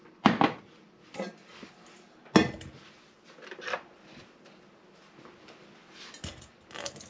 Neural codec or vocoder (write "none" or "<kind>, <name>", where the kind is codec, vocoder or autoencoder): none